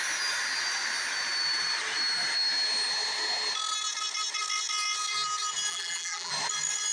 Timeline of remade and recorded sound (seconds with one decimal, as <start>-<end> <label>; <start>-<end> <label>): 0.0-5.7 recorded; 5.7-6.3 remade; 6.3-6.9 recorded